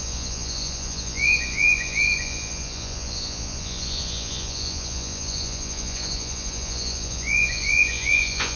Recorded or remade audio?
remade